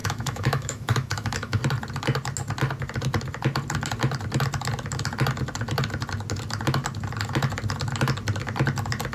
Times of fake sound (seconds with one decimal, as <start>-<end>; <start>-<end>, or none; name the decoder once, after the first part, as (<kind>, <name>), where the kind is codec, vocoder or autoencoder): 0.0-1.6 (autoencoder, DAC-VAE)